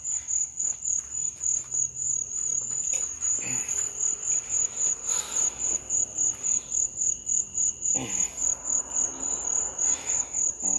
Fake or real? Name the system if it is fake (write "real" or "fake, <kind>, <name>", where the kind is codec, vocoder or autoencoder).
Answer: real